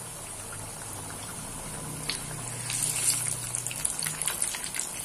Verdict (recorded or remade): recorded